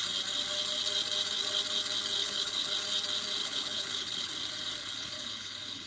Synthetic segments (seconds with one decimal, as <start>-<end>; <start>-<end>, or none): 2.2-2.7; 3.4-4.3; 4.8-5.9